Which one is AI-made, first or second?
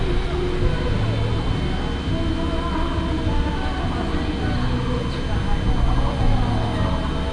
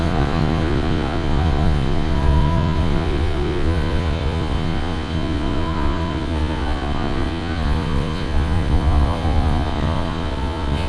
second